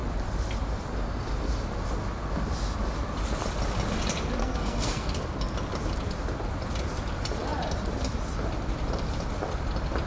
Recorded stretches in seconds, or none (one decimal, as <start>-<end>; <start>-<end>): 0.0-4.4; 5.2-10.1